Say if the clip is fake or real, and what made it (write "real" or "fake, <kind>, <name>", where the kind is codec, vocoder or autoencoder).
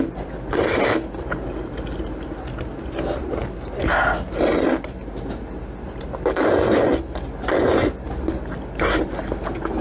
real